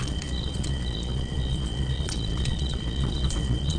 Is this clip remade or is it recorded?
remade